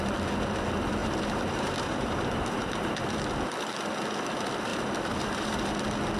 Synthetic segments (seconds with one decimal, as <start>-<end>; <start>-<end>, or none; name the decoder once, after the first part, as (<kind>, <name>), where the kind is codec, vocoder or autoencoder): 1.0-2.7 (vocoder, BigVGAN v2); 4.7-5.7